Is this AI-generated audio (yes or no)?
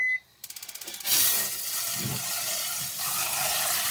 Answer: no